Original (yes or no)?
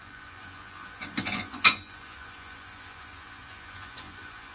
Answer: no